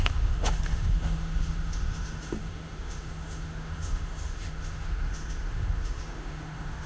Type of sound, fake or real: fake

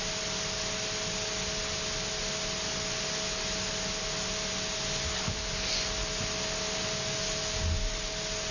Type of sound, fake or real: real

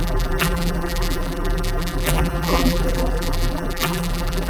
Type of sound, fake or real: fake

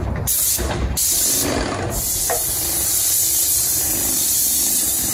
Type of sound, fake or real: fake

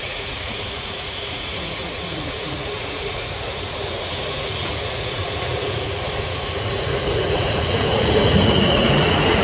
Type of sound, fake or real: fake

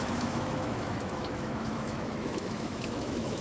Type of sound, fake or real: fake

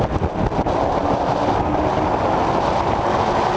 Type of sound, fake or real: real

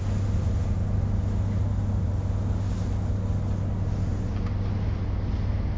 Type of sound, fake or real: real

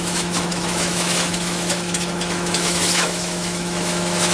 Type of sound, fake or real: fake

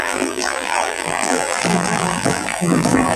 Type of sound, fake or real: fake